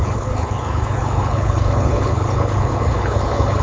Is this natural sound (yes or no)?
no